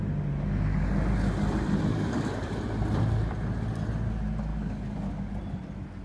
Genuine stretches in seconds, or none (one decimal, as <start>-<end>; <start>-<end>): 0.0-1.9; 2.6-4.5; 5.3-6.0